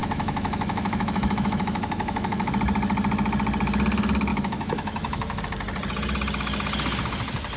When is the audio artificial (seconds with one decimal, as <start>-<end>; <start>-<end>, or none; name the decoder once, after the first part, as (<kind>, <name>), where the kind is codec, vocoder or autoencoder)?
0.0-2.5 (autoencoder, DAC-VAE); 4.3-5.4